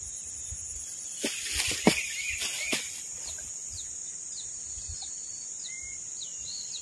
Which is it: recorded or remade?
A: remade